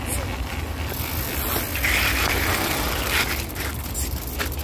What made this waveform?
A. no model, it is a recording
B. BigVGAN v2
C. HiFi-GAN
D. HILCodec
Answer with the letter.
A